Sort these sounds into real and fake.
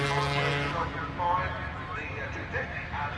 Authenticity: real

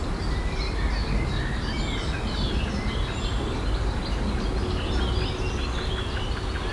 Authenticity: real